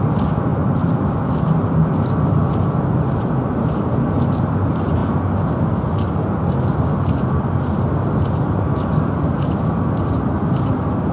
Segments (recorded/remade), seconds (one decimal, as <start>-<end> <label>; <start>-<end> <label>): 0.0-0.5 recorded; 0.5-1.0 remade; 1.0-11.1 recorded